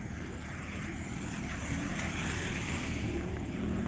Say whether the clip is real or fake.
fake